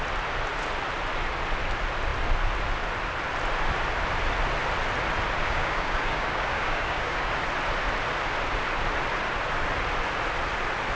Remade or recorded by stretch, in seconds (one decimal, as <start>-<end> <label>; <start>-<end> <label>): 0.0-5.4 recorded; 5.4-7.3 remade; 7.3-10.9 recorded